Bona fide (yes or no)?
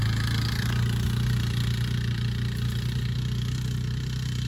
yes